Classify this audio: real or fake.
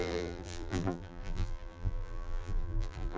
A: fake